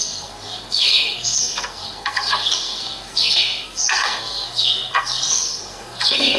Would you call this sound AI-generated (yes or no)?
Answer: yes